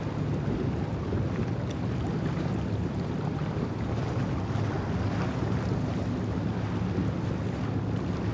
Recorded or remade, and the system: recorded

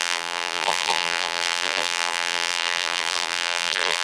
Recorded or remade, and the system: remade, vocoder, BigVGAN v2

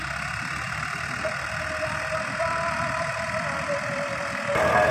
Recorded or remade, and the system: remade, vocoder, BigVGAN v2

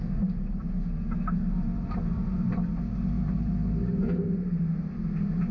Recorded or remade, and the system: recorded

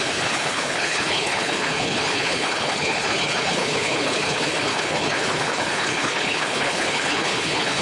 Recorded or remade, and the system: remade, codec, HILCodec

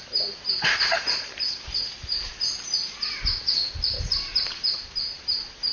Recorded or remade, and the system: recorded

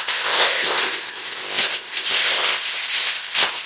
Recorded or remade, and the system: remade, codec, ZipCodec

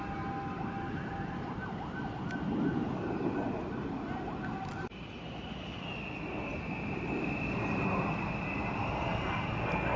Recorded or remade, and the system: recorded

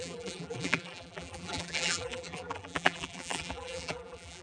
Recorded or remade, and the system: remade, vocoder, BigVGAN v2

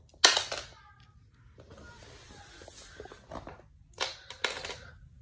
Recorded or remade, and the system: recorded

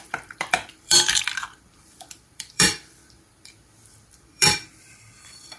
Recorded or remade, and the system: remade, vocoder, BigVGAN v2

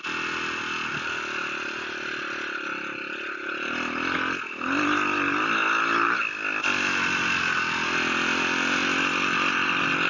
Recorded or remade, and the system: recorded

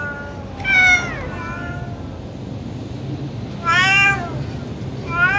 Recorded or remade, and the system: recorded